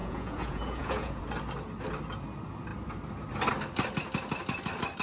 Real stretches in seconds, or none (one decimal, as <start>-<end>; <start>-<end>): 1.2-5.0